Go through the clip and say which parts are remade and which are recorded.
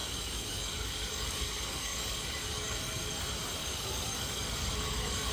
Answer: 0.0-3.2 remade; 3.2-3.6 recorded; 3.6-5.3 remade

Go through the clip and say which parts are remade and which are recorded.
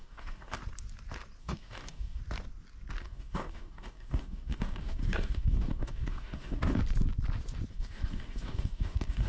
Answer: 0.0-0.6 remade; 0.6-1.4 recorded; 1.4-2.2 remade; 2.2-3.0 recorded; 3.0-6.8 remade; 6.8-7.7 recorded; 7.7-9.3 remade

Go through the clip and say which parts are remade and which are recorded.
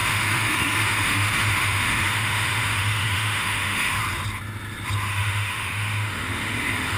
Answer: 0.0-4.0 remade; 4.0-5.1 recorded; 5.1-7.0 remade